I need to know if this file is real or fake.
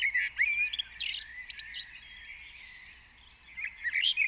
real